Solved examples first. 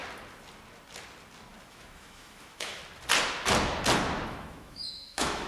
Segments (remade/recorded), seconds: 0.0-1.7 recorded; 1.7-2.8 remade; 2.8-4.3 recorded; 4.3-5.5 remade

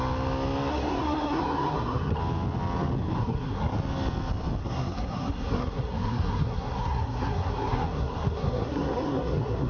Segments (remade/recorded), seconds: 0.0-0.7 recorded; 0.7-2.2 remade; 2.2-3.2 recorded; 3.2-3.8 remade; 3.8-4.6 recorded; 4.6-9.7 remade

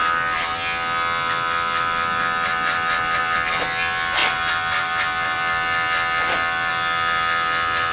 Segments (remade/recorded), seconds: 0.0-7.9 recorded

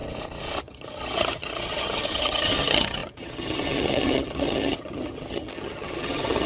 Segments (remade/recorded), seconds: 0.0-0.6 recorded; 0.6-6.5 remade

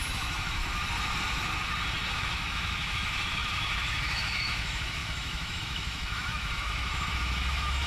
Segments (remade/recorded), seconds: 0.0-0.6 remade; 0.6-2.1 recorded; 2.1-7.9 remade